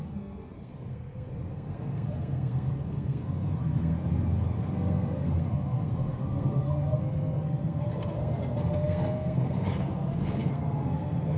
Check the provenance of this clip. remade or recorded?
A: remade